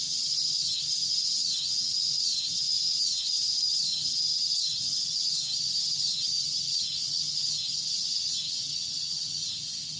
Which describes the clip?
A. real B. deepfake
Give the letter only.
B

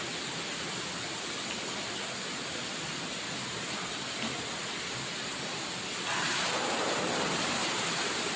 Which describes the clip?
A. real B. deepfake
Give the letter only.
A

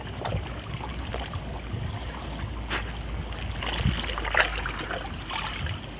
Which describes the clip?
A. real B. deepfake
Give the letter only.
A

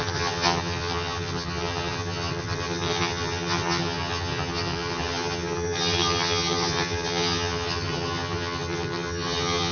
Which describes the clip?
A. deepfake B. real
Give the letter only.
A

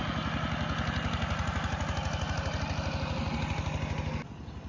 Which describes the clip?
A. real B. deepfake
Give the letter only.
A